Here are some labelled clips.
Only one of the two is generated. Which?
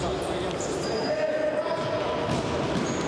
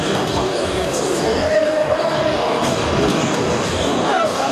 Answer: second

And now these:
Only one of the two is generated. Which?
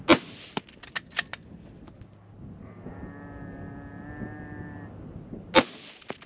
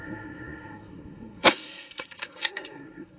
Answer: second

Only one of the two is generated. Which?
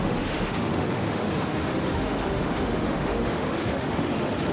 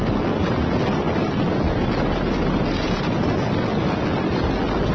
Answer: first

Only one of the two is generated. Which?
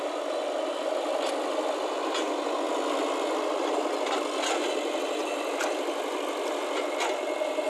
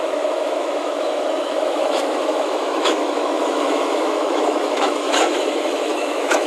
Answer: second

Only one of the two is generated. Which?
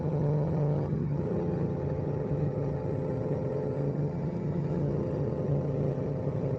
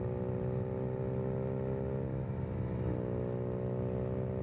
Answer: first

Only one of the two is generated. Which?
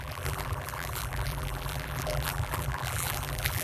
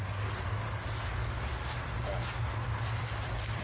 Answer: first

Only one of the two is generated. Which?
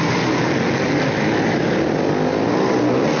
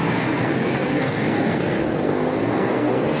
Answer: second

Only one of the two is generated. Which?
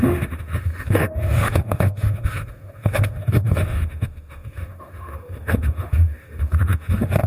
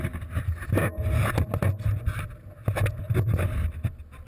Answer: first